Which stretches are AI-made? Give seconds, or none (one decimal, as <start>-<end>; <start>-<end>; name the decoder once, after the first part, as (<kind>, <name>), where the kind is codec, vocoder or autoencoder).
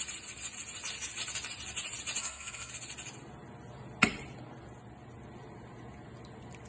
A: 2.2-2.7 (codec, SNAC)